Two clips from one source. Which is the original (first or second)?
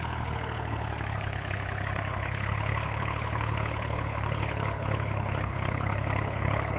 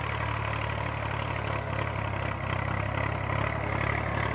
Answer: second